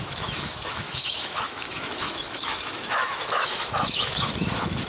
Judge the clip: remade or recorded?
remade